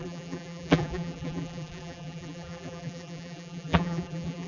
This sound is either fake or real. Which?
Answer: fake